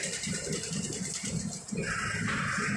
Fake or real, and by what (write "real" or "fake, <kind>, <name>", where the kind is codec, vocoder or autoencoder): real